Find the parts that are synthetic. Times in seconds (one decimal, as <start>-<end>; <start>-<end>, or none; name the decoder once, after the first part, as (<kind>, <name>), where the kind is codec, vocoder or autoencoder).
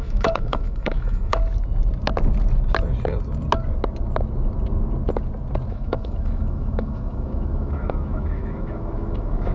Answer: 0.0-1.4 (autoencoder, DAC-VAE); 5.7-9.5